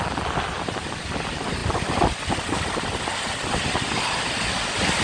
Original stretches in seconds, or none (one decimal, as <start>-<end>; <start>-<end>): 0.0-5.0

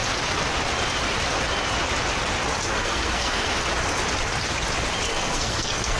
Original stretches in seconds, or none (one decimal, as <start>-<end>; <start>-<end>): 0.0-2.7; 3.5-5.1

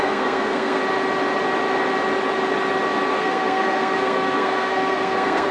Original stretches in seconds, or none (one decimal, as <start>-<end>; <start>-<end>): 0.8-3.1

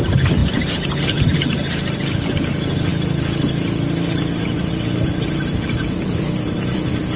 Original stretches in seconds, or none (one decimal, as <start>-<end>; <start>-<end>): 0.0-7.2